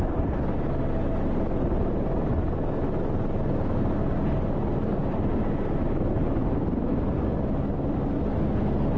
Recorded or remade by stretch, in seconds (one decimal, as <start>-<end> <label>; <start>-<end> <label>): 0.0-9.0 recorded